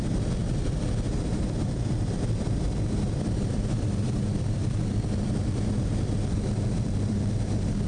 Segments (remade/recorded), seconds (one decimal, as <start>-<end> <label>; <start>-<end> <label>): 0.0-7.9 remade